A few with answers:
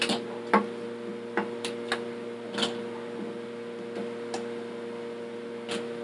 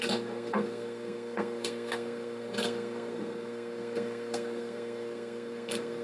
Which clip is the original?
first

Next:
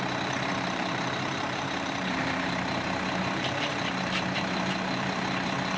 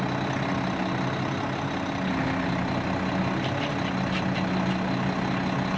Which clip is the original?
second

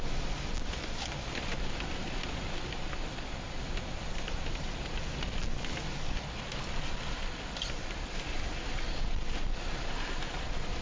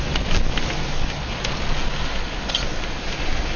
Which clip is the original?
second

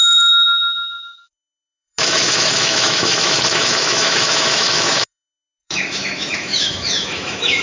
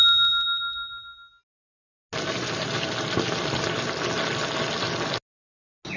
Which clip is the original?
second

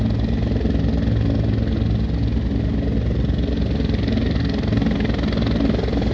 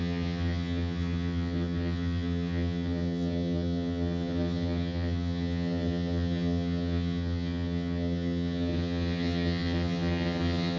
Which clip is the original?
first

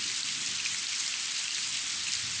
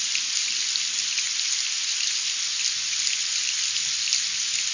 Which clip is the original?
second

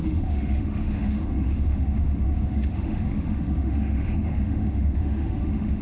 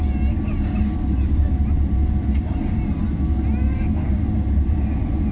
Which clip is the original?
second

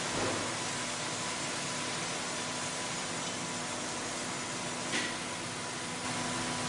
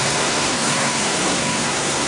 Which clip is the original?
first